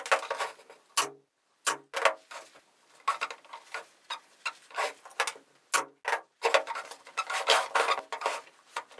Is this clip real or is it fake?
real